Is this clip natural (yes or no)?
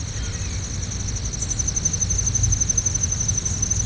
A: yes